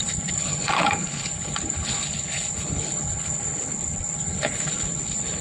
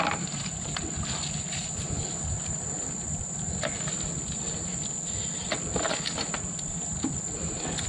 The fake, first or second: first